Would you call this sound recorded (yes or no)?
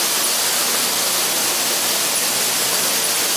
yes